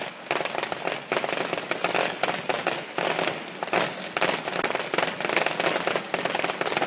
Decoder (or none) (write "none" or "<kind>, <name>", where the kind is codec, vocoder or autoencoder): none